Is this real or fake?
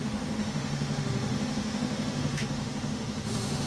fake